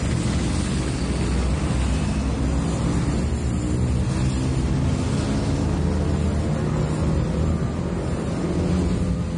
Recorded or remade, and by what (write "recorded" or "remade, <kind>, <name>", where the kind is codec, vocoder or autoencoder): recorded